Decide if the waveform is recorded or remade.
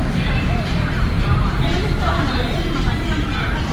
remade